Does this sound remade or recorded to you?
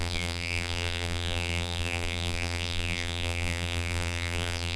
remade